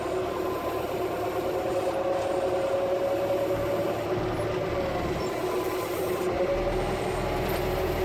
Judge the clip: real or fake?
real